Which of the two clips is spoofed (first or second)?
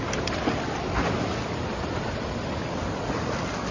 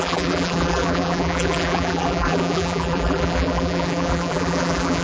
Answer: second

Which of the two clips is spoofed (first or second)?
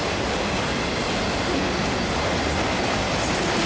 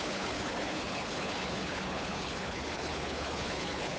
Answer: second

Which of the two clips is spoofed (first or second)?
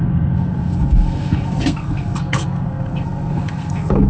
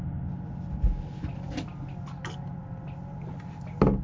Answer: first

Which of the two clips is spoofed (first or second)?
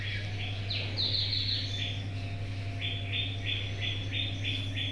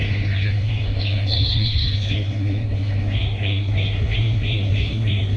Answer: second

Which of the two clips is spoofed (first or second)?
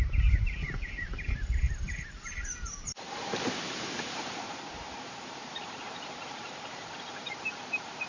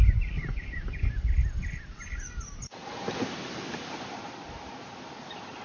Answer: first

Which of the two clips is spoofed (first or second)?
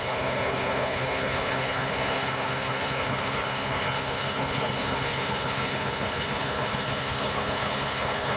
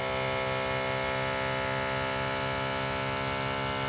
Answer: first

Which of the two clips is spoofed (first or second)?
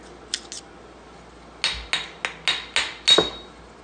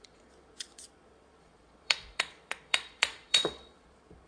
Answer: second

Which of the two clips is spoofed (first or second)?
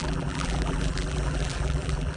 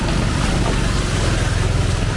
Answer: first